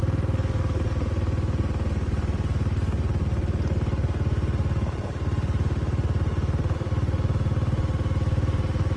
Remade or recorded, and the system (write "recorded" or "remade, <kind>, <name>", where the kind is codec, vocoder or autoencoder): recorded